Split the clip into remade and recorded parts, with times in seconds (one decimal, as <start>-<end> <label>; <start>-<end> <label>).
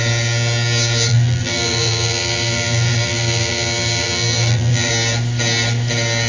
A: 0.0-1.1 recorded; 1.1-4.9 remade; 4.9-6.3 recorded